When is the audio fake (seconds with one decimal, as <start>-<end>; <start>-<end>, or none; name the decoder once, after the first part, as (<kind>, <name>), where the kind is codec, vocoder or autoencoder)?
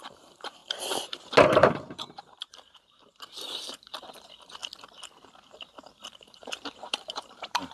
0.0-0.6 (vocoder, BigVGAN v2); 1.5-4.6; 6.1-7.7